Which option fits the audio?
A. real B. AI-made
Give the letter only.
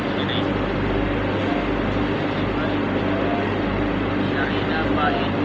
A